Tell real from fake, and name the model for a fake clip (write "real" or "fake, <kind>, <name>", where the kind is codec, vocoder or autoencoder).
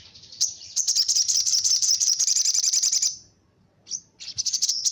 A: fake, vocoder, BigVGAN v2